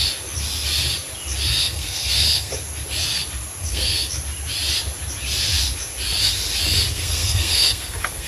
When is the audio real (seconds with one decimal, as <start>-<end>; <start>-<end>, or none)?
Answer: 0.0-1.6; 2.5-3.6; 4.1-6.9